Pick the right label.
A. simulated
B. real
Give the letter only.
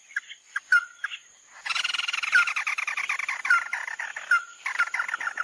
B